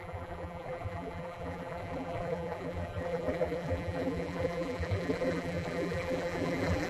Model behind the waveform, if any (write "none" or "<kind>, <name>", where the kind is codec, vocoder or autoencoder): vocoder, BigVGAN v2